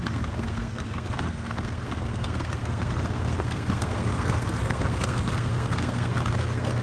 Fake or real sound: fake